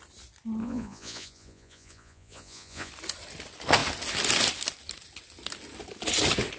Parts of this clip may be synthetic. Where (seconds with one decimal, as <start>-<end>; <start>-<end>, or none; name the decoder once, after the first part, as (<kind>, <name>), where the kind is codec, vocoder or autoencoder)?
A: 0.6-2.9 (vocoder, Vocos)